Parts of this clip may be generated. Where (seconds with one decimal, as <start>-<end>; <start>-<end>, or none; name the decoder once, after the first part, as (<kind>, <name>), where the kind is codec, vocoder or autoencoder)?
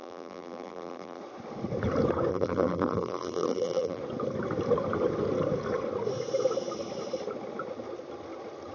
0.0-1.2 (vocoder, BigVGAN v2); 2.3-4.0